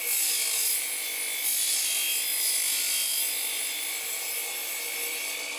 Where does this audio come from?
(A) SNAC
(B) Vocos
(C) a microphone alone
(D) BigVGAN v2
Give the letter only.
D